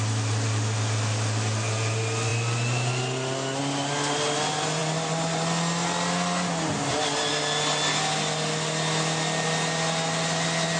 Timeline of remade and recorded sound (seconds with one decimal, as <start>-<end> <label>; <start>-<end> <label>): 0.0-10.8 recorded